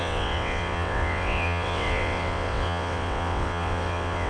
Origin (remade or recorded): remade